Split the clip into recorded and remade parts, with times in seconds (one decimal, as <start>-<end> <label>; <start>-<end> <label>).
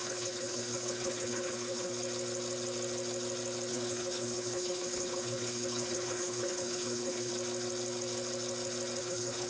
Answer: 0.0-1.9 remade; 1.9-3.7 recorded; 3.7-7.3 remade; 7.3-9.0 recorded; 9.0-9.5 remade